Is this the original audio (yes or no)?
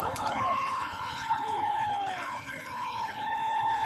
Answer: no